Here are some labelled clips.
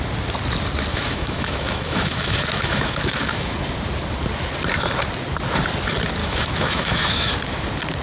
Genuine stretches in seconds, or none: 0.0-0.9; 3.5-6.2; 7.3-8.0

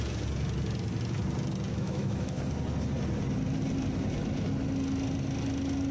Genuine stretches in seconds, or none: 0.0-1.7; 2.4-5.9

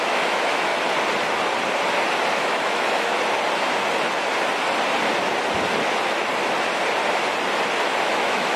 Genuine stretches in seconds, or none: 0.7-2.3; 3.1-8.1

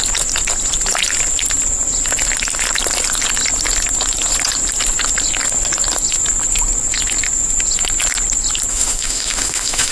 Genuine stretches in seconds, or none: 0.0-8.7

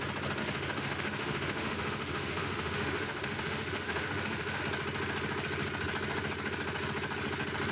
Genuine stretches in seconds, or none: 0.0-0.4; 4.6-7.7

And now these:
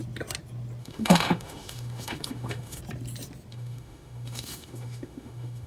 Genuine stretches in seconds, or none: 0.0-0.8; 2.8-3.5

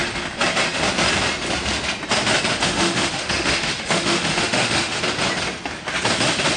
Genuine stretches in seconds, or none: 0.0-2.5; 5.0-6.6